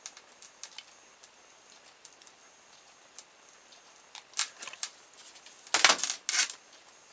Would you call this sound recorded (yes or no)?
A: yes